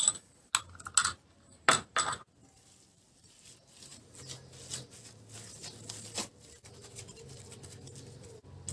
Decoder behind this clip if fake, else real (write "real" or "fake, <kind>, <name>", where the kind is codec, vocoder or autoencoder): real